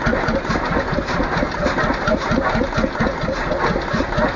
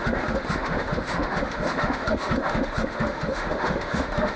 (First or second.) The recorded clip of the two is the first